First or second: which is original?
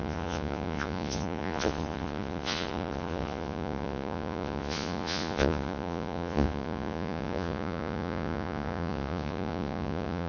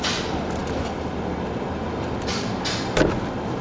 second